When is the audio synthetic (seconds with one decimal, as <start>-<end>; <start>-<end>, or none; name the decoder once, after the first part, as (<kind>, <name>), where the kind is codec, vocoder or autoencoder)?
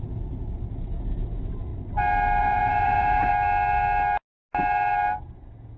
0.0-1.7 (vocoder, Vocos); 2.4-3.3; 5.2-5.8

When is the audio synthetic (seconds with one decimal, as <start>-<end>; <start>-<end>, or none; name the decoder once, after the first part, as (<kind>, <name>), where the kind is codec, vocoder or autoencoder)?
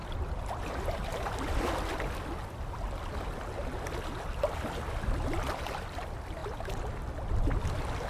none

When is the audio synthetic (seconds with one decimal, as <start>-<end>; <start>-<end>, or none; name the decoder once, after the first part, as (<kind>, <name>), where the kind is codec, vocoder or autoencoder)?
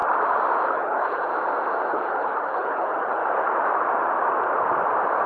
0.7-1.3 (codec, HILCodec); 1.9-3.2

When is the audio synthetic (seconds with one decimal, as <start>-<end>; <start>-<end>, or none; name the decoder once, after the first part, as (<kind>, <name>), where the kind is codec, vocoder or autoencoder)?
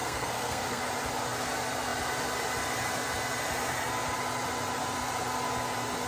0.0-0.8 (codec, SNAC)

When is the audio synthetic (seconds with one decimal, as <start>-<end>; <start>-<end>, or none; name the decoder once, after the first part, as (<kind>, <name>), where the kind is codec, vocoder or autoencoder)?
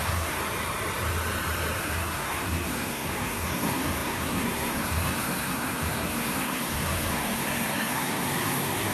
0.0-0.4 (codec, SNAC); 1.8-8.9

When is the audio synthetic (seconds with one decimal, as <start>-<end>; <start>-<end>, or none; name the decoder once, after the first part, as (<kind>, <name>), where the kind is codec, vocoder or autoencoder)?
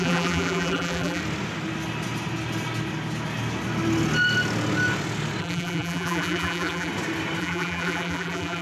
0.0-1.2 (vocoder, BigVGAN v2); 5.4-6.9; 7.4-8.6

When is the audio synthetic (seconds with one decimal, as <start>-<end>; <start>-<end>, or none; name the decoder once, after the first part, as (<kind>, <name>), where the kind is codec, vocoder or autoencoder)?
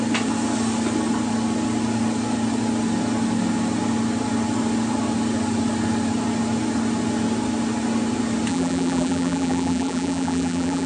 8.5-10.9 (vocoder, BigVGAN v2)